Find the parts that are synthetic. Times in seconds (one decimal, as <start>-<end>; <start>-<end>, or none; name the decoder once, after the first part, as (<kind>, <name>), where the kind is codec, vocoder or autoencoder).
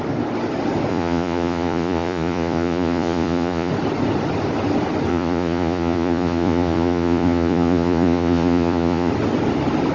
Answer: 0.9-3.7 (vocoder, Vocos); 5.1-9.1